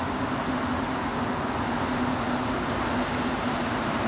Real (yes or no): yes